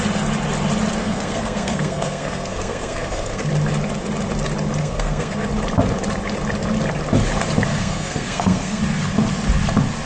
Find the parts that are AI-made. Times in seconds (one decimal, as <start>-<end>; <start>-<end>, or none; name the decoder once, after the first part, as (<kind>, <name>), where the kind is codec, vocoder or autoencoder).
1.0-3.5 (codec, SNAC); 4.8-5.5; 7.7-8.8